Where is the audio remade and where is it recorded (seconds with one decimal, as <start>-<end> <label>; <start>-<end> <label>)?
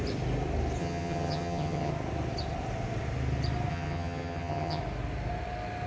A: 0.0-0.8 recorded; 0.8-1.9 remade; 1.9-3.7 recorded; 3.7-4.8 remade; 4.8-5.9 recorded